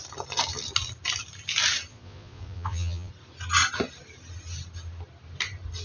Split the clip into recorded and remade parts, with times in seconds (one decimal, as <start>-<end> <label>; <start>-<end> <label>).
0.0-1.9 recorded; 1.9-3.1 remade; 3.1-5.8 recorded